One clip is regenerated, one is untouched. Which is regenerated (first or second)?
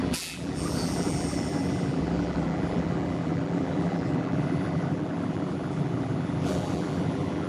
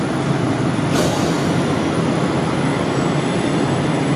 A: first